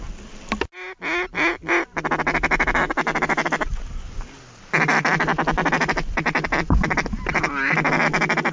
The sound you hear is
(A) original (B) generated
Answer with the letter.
A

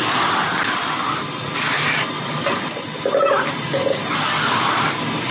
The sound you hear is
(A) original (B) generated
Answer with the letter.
A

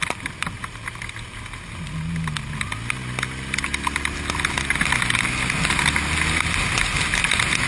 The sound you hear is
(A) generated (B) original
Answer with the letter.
B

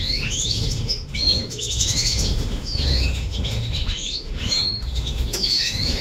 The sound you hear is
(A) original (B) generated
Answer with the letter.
B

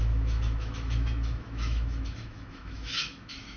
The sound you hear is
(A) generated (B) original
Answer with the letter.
A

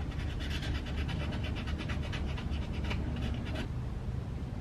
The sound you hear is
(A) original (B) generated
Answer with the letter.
A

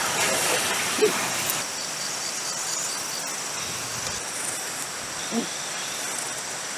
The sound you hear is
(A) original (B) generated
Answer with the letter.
A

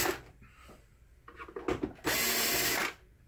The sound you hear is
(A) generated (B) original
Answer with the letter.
B